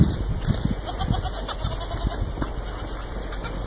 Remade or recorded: recorded